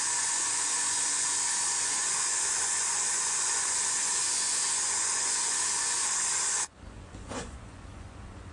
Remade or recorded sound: remade